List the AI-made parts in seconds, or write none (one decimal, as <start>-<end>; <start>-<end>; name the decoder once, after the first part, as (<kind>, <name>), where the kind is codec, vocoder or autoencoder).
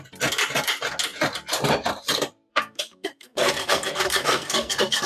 2.5-5.1 (codec, SNAC)